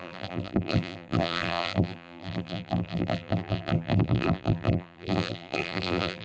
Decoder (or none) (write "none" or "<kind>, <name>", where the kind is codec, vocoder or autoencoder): vocoder, BigVGAN v2